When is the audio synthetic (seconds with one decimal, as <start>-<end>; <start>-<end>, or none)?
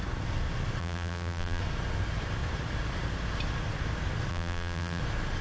0.8-1.6; 4.3-5.0